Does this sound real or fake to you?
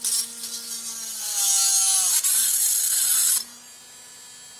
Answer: real